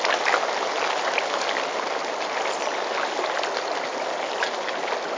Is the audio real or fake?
real